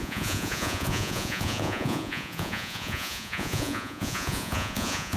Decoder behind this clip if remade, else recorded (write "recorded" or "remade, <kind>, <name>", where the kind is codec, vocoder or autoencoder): remade, vocoder, Vocos